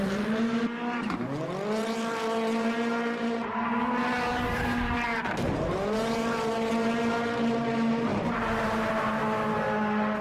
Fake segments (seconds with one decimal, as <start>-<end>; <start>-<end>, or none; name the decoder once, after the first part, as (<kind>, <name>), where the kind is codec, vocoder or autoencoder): 4.3-6.7 (vocoder, BigVGAN v2); 8.1-9.2